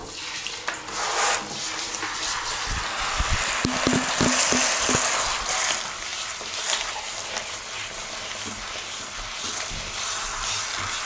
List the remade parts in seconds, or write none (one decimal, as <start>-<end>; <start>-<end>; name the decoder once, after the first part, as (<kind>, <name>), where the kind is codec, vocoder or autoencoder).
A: 6.1-7.4 (vocoder, BigVGAN v2)